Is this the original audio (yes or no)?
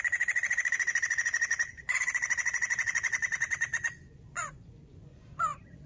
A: no